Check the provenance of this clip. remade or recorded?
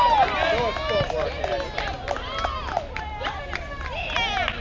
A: recorded